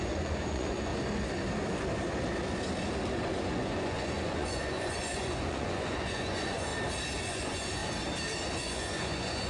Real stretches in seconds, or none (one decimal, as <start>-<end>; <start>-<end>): 0.9-3.3; 6.7-7.2; 7.8-8.6